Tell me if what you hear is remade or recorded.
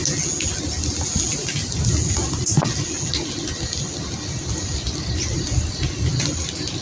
recorded